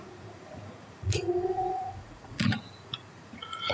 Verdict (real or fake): fake